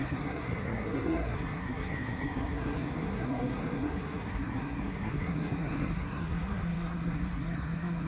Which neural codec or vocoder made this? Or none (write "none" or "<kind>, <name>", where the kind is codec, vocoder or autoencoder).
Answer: codec, SNAC